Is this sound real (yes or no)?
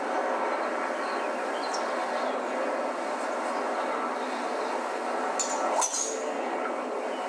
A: yes